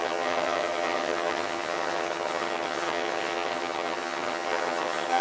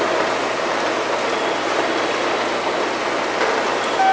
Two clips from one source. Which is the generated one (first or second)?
first